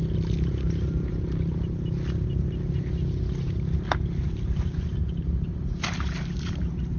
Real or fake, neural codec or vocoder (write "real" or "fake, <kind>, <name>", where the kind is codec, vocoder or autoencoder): real